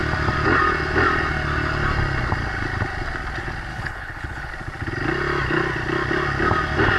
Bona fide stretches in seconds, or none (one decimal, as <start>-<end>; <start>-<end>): 0.0-3.7; 4.5-7.0

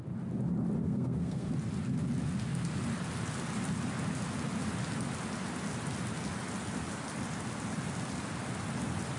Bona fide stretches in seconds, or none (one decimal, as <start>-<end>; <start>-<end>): 0.0-0.8; 1.5-9.2

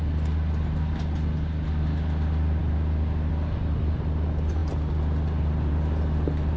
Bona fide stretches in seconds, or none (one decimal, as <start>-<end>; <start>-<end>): 0.0-6.6

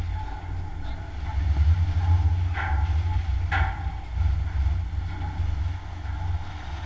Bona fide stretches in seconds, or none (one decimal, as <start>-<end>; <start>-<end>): 0.0-6.9

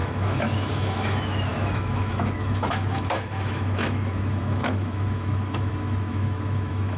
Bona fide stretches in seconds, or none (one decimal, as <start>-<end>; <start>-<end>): none

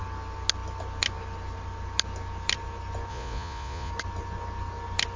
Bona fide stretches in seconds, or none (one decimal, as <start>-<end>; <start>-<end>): 0.0-3.1; 3.9-5.2

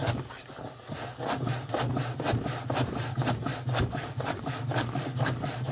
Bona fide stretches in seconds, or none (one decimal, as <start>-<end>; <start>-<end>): 0.4-3.8